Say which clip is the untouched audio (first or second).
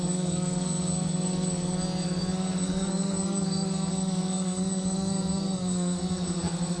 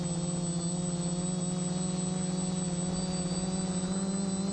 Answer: second